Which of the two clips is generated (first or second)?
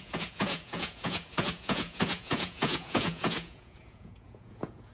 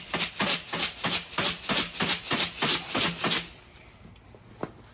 first